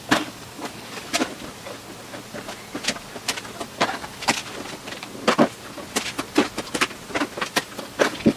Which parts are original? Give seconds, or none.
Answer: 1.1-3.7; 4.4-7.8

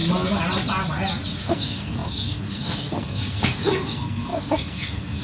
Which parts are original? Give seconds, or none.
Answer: 0.0-1.4

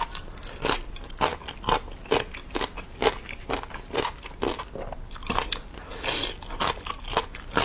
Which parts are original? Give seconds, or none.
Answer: 0.0-7.6

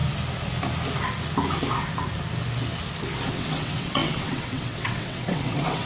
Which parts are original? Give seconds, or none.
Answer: 0.0-3.3

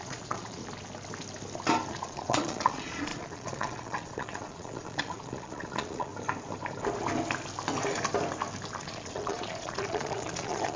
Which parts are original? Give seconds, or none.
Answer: 0.6-1.9; 6.1-8.8